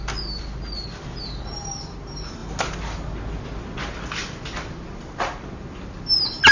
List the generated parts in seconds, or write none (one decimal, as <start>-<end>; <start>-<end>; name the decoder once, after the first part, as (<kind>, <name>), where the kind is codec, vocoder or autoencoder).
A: none